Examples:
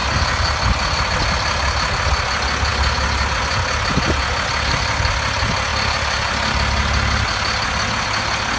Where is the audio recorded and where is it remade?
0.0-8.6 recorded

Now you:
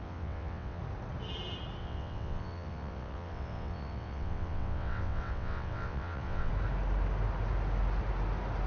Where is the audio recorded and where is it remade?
0.0-0.8 remade; 0.8-1.8 recorded; 1.8-6.5 remade; 6.5-8.7 recorded